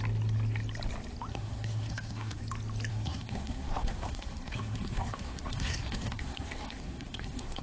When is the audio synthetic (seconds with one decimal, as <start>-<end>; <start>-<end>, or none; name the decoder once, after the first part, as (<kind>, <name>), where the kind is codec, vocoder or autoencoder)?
1.3-2.4 (codec, SNAC); 2.9-7.6